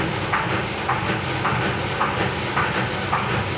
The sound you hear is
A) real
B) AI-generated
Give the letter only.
A